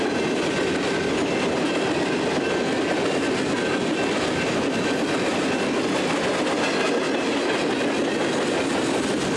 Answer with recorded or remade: recorded